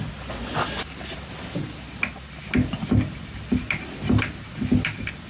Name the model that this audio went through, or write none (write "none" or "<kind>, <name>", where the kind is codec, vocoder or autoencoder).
none